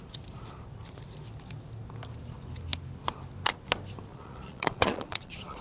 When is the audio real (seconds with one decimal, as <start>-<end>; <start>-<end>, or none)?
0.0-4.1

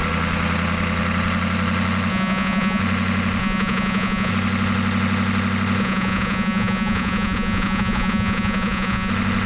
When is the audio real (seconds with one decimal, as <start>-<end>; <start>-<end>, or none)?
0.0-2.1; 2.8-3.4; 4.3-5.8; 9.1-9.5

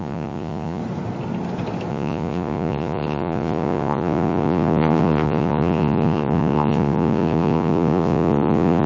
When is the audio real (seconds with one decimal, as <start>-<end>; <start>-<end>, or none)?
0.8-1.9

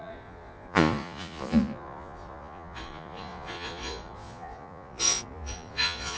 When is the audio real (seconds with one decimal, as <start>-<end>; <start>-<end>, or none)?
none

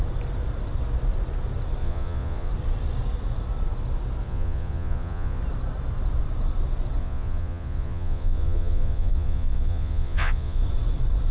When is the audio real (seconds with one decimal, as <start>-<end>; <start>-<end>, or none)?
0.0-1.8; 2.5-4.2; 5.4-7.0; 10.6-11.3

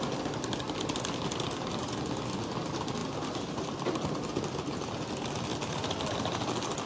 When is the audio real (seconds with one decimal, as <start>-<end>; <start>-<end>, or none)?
0.0-6.9

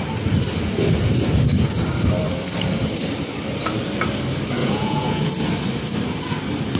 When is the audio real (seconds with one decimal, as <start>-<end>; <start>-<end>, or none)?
0.0-4.6; 5.3-6.8